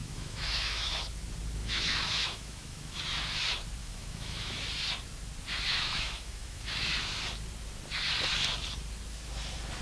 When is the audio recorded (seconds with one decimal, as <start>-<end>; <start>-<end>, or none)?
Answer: 1.0-1.6; 3.0-3.8; 4.6-5.7; 6.9-9.8